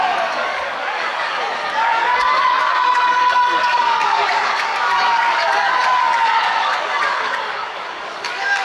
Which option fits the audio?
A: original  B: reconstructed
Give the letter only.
B